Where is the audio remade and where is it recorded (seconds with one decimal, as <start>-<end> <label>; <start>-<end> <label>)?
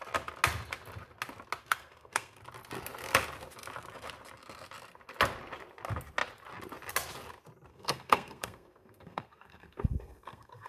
0.0-1.6 recorded; 1.6-2.4 remade; 2.4-7.7 recorded; 7.7-10.7 remade